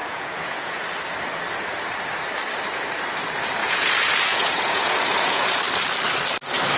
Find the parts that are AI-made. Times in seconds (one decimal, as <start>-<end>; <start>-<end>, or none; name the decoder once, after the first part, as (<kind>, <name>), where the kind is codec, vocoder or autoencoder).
0.0-0.8 (vocoder, Vocos); 3.6-5.6